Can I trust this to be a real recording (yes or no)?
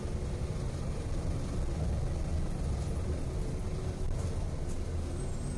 yes